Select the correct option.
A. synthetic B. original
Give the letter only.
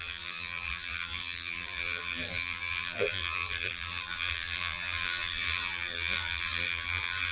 A